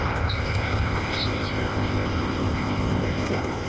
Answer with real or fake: fake